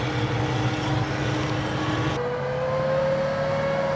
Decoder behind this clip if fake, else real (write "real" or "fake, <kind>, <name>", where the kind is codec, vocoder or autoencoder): real